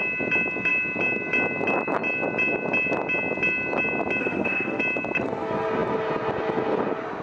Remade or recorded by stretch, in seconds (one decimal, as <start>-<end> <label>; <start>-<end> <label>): 0.0-4.2 recorded; 4.2-4.8 remade; 4.8-7.2 recorded

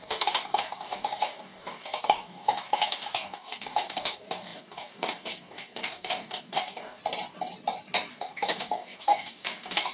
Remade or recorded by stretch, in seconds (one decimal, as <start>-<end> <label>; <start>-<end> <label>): 0.0-7.0 remade; 7.0-8.1 recorded; 8.1-9.9 remade